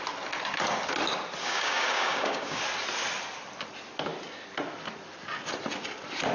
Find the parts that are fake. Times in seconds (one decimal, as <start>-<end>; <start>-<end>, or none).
1.4-2.6